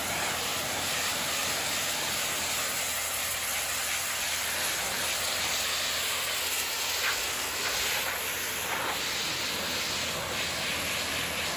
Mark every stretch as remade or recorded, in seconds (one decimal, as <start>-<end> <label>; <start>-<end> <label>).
0.0-11.6 recorded